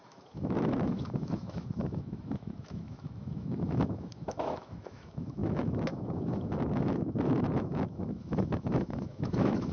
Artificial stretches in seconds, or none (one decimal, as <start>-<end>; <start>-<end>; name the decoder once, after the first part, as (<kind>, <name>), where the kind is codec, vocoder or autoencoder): 0.0-9.7 (autoencoder, DAC-VAE)